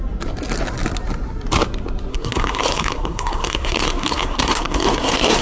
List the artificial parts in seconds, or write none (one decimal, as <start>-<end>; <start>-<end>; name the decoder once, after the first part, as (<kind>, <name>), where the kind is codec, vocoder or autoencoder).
2.1-5.4 (codec, SNAC)